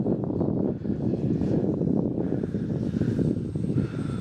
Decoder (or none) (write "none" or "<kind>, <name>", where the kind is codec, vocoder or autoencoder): none